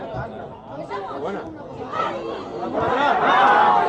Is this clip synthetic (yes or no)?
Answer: no